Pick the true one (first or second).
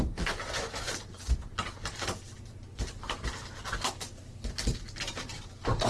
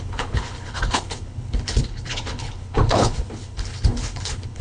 first